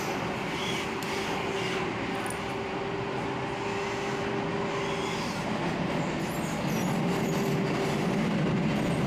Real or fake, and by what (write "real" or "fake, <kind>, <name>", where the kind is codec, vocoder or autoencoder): real